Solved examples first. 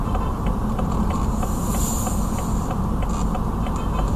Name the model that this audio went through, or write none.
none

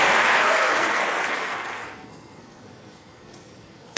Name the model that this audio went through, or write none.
codec, SNAC